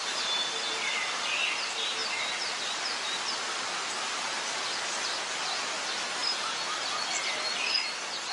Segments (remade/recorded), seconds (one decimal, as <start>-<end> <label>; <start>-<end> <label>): 0.0-2.0 recorded; 2.0-3.9 remade; 3.9-8.3 recorded